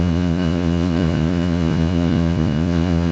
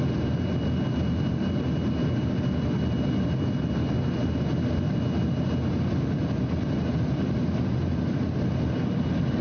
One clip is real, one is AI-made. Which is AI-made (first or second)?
first